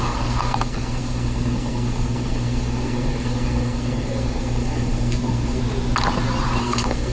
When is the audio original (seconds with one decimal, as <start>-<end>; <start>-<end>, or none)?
5.6-6.6